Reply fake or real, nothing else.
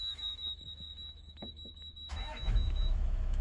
fake